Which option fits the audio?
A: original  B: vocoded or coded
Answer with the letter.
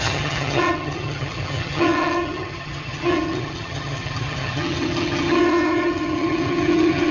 B